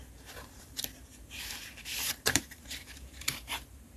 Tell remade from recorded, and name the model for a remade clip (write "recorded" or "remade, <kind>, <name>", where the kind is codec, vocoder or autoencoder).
remade, vocoder, BigVGAN v2